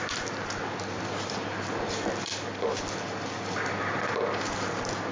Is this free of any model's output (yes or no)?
no